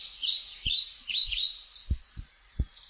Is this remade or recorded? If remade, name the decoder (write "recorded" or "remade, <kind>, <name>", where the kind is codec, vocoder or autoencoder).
remade, vocoder, Vocos